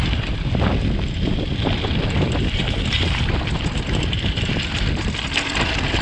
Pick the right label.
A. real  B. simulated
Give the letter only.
A